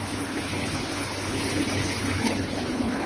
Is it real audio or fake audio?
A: fake